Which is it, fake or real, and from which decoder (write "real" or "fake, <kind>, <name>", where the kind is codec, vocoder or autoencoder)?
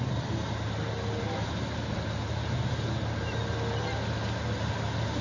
real